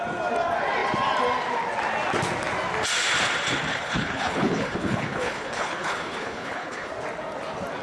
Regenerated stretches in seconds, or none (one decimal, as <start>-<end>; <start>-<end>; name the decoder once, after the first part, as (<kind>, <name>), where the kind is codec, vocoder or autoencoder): 3.7-6.9 (codec, HILCodec)